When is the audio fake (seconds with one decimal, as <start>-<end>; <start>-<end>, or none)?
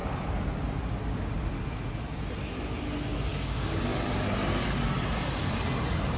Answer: 3.3-3.8